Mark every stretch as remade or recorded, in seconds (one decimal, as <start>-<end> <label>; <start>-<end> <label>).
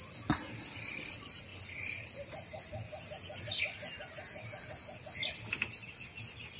0.0-6.6 recorded